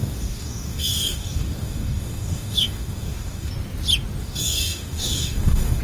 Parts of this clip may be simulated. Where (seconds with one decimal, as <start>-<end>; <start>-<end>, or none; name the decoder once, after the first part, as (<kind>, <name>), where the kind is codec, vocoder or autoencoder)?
0.0-3.5 (codec, DAC); 4.2-5.8

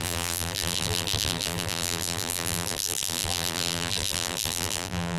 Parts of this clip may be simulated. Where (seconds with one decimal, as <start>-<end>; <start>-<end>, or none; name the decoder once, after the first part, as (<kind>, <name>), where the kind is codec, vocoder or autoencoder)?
0.0-5.2 (vocoder, BigVGAN v2)

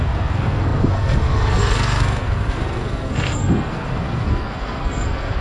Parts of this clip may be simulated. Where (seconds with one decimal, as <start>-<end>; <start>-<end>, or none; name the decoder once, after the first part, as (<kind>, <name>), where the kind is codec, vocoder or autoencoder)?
0.0-5.4 (codec, SNAC)

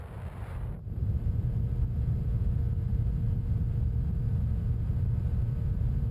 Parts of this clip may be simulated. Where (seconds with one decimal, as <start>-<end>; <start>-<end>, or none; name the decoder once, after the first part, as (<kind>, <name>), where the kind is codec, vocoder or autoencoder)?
0.5-1.2 (vocoder, BigVGAN v2); 4.8-5.3

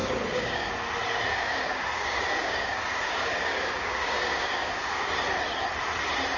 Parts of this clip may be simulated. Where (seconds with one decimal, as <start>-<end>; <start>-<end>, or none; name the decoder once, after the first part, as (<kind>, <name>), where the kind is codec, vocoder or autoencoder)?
0.0-0.7 (codec, DAC); 1.3-5.1

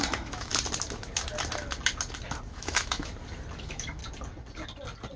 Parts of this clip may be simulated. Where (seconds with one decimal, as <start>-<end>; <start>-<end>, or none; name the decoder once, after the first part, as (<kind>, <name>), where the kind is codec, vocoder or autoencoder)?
0.0-0.5 (autoencoder, DAC-VAE); 2.5-3.1; 3.6-4.0

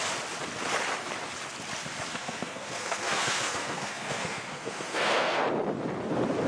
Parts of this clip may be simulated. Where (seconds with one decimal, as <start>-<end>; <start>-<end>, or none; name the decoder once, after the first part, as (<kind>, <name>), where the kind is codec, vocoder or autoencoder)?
2.1-5.4 (codec, SNAC)

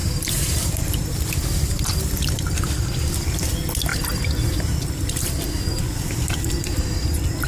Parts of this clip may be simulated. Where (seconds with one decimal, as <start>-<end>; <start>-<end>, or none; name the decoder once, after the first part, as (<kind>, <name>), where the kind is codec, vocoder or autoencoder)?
0.0-1.1 (vocoder, BigVGAN v2)